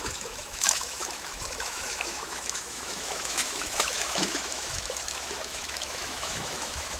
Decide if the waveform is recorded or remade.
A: remade